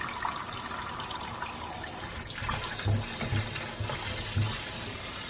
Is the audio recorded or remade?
recorded